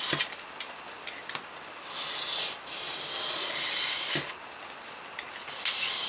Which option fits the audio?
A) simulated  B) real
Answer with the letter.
B